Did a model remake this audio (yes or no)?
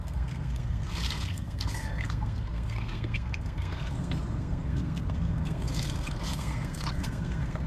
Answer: yes